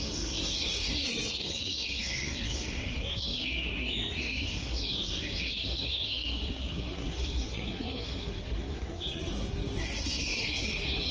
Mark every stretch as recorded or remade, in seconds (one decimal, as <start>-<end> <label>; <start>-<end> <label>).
0.0-11.1 remade